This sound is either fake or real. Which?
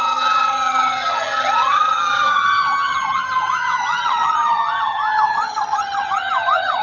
fake